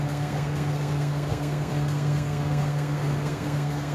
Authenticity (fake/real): fake